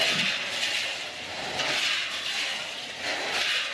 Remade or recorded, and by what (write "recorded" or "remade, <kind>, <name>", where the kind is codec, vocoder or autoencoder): recorded